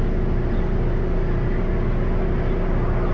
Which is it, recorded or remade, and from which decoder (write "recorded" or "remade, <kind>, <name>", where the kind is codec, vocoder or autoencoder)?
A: recorded